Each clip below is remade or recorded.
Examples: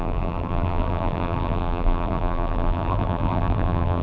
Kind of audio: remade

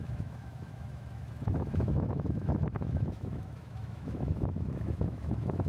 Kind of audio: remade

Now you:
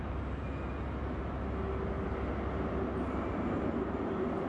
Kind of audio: recorded